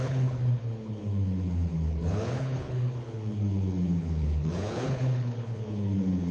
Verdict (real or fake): fake